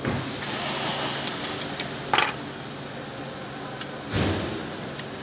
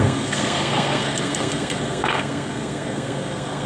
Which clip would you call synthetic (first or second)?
second